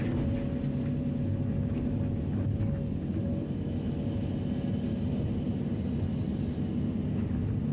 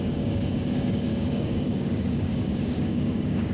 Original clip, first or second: first